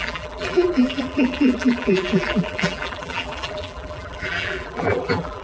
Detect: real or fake fake